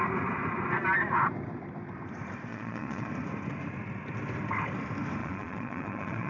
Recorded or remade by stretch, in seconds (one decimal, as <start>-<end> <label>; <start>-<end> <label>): 0.0-2.5 recorded; 2.5-3.1 remade; 3.1-5.2 recorded; 5.2-6.3 remade